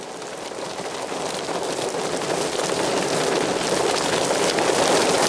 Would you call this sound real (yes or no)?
yes